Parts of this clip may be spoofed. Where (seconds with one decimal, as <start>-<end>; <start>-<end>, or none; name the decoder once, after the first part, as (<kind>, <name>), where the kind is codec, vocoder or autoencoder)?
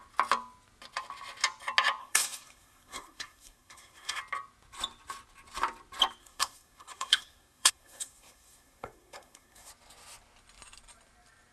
2.0-4.2 (codec, SNAC); 6.2-9.7